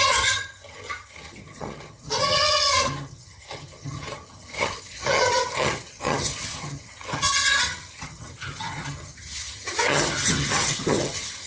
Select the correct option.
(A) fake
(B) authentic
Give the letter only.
A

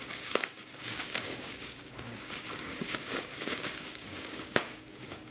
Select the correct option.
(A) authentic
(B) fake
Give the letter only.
B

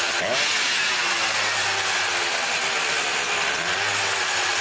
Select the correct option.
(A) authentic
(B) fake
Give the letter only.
A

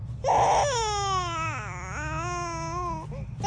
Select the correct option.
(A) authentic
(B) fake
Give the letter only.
A